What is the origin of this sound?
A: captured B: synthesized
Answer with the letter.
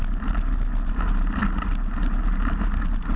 A